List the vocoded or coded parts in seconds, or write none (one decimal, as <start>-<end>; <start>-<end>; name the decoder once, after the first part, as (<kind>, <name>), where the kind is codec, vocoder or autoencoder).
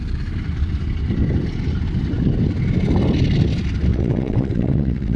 3.9-5.2 (vocoder, WaveNeXt)